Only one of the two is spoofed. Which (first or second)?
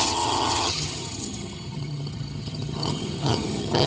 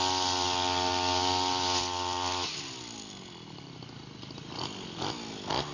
first